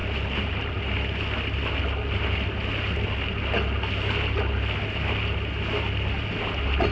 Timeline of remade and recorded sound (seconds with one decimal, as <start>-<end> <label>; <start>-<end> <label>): 0.0-6.9 recorded